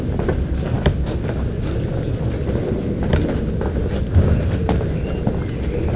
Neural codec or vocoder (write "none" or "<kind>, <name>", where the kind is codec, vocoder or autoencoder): none